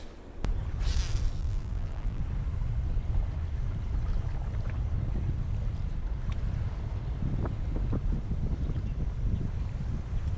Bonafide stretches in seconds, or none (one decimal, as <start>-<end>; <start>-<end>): 0.0-1.4; 2.2-10.4